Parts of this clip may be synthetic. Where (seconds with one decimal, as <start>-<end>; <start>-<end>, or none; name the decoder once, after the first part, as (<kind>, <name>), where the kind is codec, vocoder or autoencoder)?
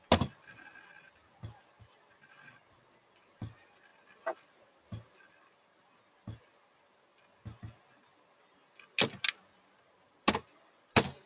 none